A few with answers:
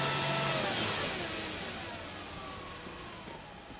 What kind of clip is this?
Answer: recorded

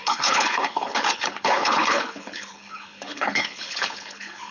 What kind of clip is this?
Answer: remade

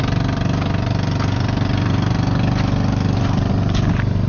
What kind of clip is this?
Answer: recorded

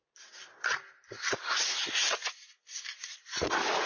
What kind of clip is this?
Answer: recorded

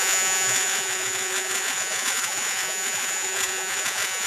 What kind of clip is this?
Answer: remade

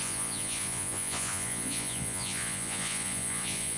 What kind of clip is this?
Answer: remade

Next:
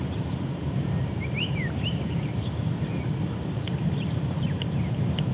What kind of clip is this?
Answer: remade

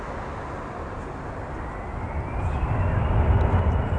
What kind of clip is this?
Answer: recorded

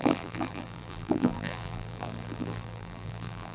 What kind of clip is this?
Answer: remade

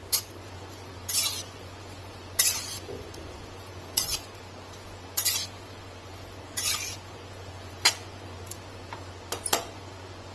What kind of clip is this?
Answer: remade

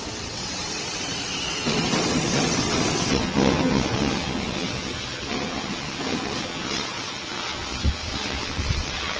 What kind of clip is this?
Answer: remade